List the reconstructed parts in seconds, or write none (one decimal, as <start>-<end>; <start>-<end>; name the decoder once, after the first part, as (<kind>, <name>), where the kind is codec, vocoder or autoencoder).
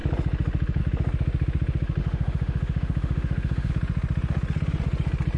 2.0-3.7 (autoencoder, DAC-VAE)